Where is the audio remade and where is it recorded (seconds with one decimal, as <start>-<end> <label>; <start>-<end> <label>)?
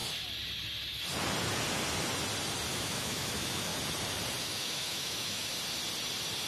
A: 0.0-2.7 recorded; 2.7-3.7 remade; 3.7-4.4 recorded; 4.4-5.5 remade; 5.5-6.5 recorded